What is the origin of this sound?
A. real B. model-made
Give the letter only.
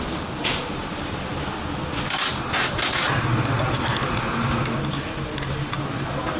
A